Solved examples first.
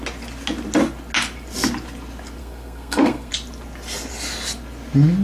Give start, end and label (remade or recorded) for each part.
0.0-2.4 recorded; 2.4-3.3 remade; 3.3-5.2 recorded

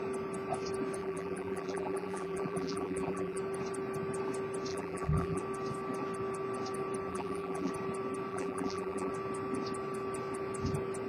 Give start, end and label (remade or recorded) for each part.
0.0-1.0 recorded; 1.0-3.4 remade; 3.4-4.7 recorded; 4.7-5.4 remade; 5.4-7.1 recorded; 7.1-7.7 remade; 7.7-8.3 recorded; 8.3-9.1 remade; 9.1-11.1 recorded

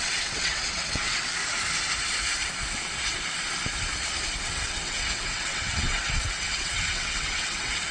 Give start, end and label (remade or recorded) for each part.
0.0-1.4 remade; 1.4-4.4 recorded; 4.4-7.9 remade

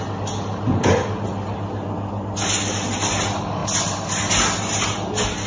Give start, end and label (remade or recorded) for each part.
0.0-5.5 recorded

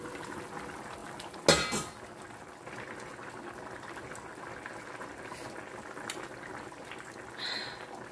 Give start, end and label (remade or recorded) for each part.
0.0-8.1 recorded